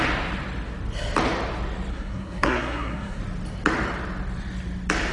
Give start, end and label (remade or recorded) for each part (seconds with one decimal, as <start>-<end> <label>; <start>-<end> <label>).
0.0-1.9 recorded; 1.9-3.2 remade; 3.2-5.1 recorded